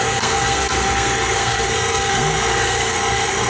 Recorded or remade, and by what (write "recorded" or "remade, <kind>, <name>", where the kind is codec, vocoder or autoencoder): remade, codec, SNAC